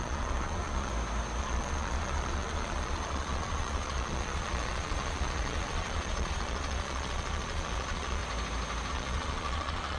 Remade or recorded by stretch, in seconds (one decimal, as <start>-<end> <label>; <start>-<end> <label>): 0.0-0.9 remade; 0.9-1.4 recorded; 1.4-8.2 remade; 8.2-8.9 recorded; 8.9-10.0 remade